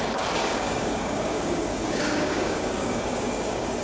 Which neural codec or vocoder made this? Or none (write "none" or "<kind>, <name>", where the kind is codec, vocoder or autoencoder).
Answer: codec, DAC